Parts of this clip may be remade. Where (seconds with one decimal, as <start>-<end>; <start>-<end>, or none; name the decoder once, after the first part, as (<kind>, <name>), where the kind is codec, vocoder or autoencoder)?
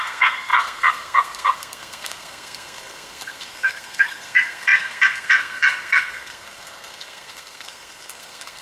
0.0-8.6 (codec, SNAC)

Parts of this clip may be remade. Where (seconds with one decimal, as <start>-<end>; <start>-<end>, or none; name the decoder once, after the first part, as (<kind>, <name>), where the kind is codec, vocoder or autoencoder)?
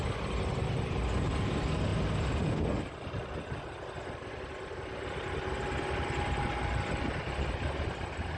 none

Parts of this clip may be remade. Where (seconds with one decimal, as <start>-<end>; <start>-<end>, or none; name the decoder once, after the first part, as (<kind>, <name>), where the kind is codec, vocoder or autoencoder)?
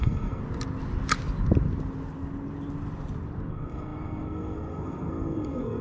0.0-0.4 (codec, SNAC); 3.5-5.8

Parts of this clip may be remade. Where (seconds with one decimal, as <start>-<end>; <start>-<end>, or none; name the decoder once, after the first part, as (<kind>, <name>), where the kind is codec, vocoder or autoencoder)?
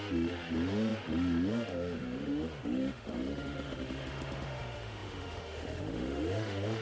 0.0-6.8 (autoencoder, DAC-VAE)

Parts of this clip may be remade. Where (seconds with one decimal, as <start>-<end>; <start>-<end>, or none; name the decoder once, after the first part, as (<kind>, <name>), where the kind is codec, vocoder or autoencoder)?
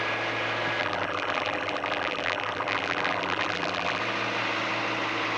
0.8-4.0 (vocoder, BigVGAN v2)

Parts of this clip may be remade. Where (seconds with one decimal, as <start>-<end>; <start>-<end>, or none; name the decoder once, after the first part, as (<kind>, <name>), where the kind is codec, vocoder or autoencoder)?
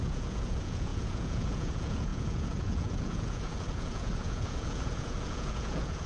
0.0-6.1 (vocoder, Vocos)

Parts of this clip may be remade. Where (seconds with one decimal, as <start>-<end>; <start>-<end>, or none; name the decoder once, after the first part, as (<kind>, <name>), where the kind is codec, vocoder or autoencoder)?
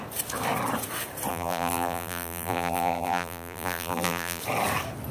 1.3-4.4 (vocoder, BigVGAN v2)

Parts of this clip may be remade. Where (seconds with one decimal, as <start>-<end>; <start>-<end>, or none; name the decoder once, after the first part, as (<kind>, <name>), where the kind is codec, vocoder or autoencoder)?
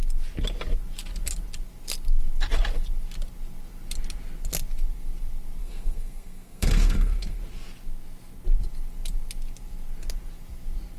5.6-7.4 (codec, SNAC)